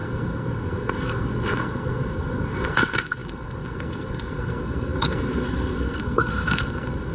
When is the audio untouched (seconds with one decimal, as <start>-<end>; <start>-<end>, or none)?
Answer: none